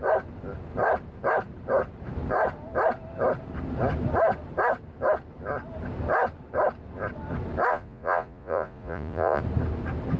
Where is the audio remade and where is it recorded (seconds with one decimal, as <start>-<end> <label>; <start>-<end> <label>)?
0.0-7.7 recorded; 7.7-9.4 remade; 9.4-10.2 recorded